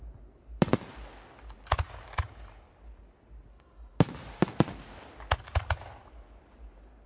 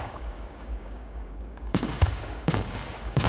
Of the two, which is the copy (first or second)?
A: second